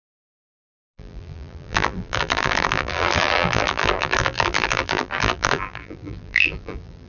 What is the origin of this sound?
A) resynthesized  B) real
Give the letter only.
A